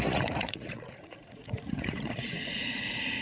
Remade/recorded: remade